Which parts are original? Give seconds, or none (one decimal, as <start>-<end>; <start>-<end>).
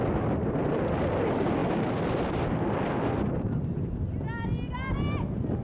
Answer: 0.0-5.6